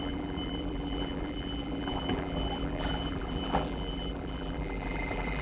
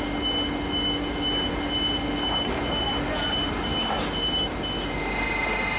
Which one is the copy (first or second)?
first